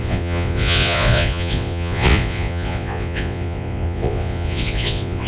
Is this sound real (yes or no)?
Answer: no